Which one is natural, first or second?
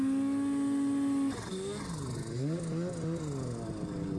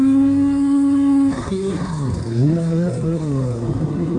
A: first